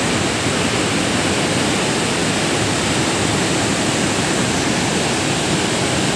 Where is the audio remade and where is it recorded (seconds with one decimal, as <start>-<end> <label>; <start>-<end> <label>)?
0.0-6.2 recorded